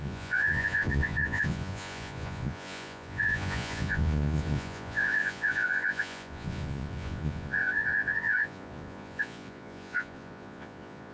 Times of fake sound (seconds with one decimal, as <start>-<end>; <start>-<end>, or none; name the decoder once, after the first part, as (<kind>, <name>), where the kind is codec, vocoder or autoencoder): 0.0-11.1 (vocoder, Vocos)